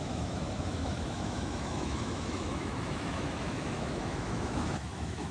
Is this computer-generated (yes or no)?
yes